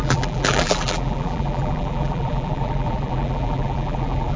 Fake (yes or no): yes